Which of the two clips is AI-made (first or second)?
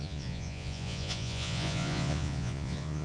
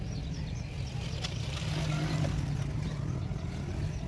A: first